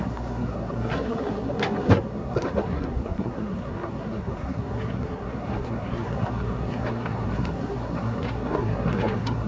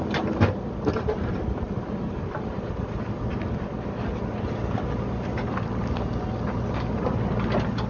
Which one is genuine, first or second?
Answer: second